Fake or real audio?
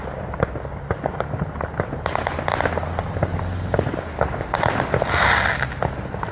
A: real